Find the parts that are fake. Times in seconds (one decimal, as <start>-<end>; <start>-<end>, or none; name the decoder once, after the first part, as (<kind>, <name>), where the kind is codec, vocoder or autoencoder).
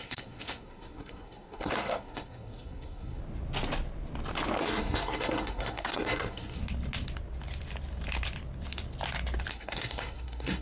0.0-3.2 (codec, SNAC); 4.6-6.6; 9.5-10.6